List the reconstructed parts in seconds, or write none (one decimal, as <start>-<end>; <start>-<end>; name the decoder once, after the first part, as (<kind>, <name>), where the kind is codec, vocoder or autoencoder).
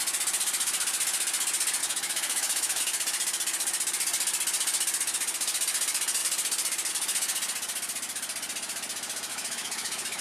1.8-2.8 (autoencoder, DAC-VAE); 9.3-10.2